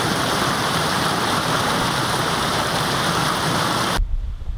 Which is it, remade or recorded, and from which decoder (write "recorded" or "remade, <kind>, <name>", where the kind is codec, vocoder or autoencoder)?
remade, vocoder, BigVGAN v2